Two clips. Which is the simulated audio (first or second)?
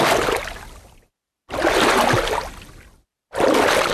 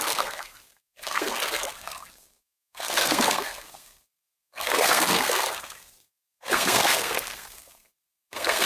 second